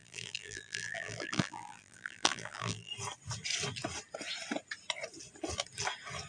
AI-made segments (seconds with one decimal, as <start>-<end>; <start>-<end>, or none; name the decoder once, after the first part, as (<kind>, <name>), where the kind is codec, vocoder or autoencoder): 0.0-2.9 (vocoder, BigVGAN v2)